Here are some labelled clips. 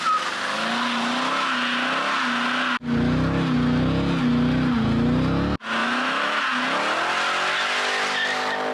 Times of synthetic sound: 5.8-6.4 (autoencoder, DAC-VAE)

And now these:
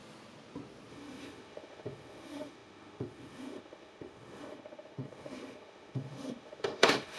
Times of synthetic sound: 0.9-7.2 (autoencoder, DAC-VAE)